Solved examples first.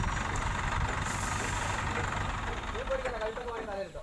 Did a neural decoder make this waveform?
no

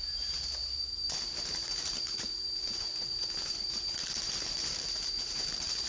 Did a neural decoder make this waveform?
yes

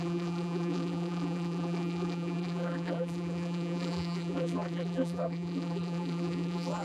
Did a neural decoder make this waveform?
yes